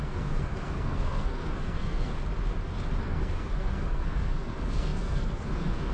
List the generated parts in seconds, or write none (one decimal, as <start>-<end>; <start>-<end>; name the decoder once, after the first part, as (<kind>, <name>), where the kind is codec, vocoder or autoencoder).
0.0-2.1 (codec, SNAC); 3.0-5.9